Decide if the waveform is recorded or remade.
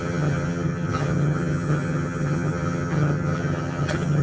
remade